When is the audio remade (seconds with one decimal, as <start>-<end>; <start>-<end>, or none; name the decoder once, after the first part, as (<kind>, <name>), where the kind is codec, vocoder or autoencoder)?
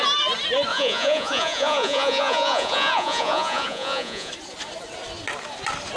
0.7-4.3 (vocoder, Vocos)